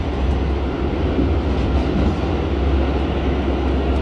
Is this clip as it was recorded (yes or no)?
yes